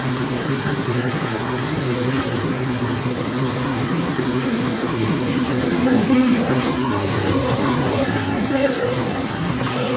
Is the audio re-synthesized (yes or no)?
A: yes